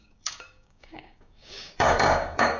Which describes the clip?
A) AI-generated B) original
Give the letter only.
A